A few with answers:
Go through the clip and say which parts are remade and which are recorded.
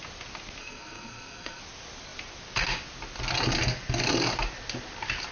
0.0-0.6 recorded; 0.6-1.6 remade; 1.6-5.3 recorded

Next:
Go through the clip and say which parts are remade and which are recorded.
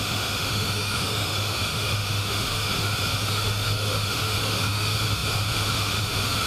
0.0-6.5 remade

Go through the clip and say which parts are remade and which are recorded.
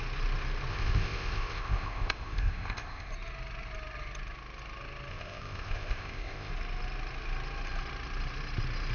0.0-0.7 recorded; 0.7-3.1 remade; 3.1-5.1 recorded; 5.1-6.5 remade; 6.5-8.9 recorded